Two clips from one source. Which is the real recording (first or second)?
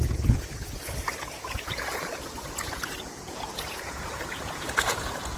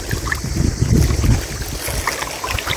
second